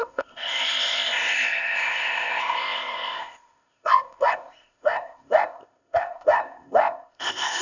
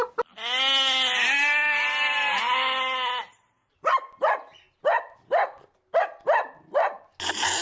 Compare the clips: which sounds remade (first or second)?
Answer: first